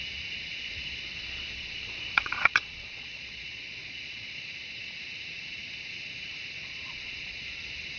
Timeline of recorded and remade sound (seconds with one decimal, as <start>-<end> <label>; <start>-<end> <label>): 0.0-0.5 recorded; 0.5-4.4 remade; 4.4-6.6 recorded; 6.6-7.4 remade; 7.4-8.0 recorded